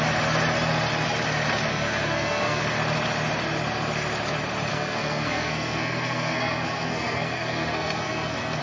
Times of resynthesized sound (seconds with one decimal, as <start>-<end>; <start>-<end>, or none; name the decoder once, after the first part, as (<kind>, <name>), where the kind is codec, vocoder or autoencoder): 1.7-2.6 (codec, SNAC); 4.7-8.6